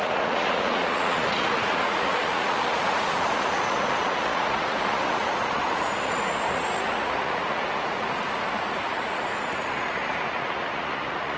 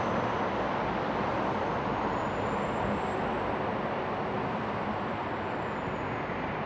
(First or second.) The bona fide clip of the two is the second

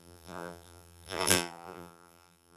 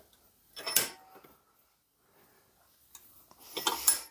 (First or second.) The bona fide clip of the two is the second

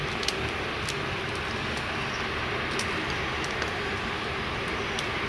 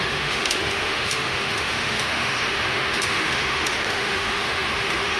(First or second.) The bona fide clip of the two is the first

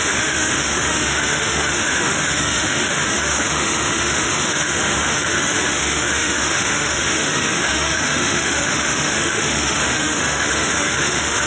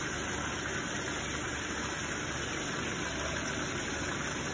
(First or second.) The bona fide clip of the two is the second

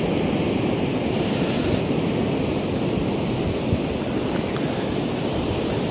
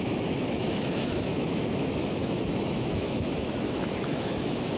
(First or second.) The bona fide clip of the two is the first